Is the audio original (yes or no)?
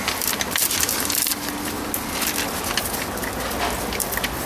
yes